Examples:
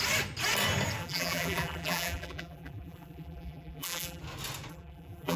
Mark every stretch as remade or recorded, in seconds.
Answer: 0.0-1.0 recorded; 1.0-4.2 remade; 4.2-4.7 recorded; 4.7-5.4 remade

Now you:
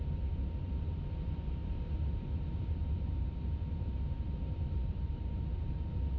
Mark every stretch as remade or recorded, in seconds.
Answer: 0.0-1.6 recorded; 1.6-3.2 remade; 3.2-4.8 recorded; 4.8-5.7 remade; 5.7-6.2 recorded

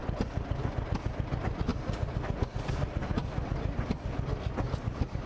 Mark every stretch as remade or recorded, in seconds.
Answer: 0.0-5.3 recorded

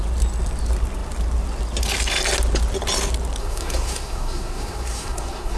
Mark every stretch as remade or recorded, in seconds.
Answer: 0.0-3.4 recorded; 3.4-5.6 remade

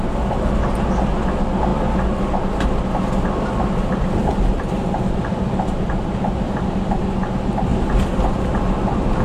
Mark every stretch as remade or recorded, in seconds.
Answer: 0.0-4.2 recorded; 4.2-7.0 remade; 7.0-7.7 recorded; 7.7-8.6 remade; 8.6-9.2 recorded

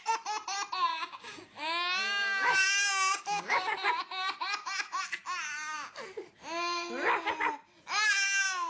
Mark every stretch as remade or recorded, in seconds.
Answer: 0.0-0.9 recorded; 0.9-3.9 remade; 3.9-8.7 recorded

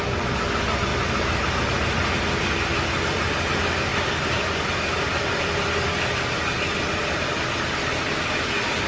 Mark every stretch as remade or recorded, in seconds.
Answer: 0.0-0.9 recorded; 0.9-1.6 remade; 1.6-8.9 recorded

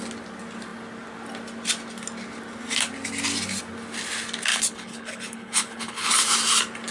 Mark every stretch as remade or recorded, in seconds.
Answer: 0.0-4.5 recorded; 4.5-6.1 remade; 6.1-6.9 recorded